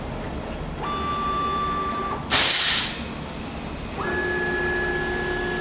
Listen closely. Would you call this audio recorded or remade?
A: recorded